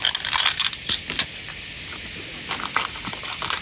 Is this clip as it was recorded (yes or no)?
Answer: yes